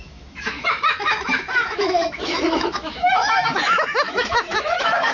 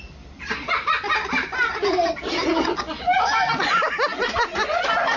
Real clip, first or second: second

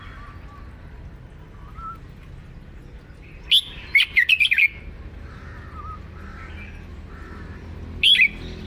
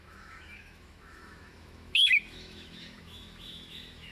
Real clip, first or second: first